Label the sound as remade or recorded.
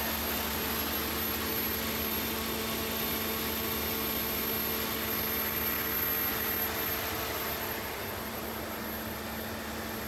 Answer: recorded